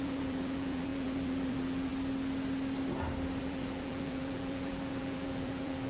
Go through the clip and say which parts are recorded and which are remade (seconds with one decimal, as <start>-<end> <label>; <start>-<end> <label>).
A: 0.0-1.9 remade; 1.9-3.4 recorded; 3.4-5.9 remade

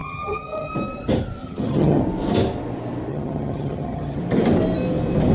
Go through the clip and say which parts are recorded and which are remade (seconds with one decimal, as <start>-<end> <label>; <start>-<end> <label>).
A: 0.0-0.7 remade; 0.7-1.4 recorded; 1.4-2.0 remade; 2.0-3.1 recorded; 3.1-4.2 remade; 4.2-5.3 recorded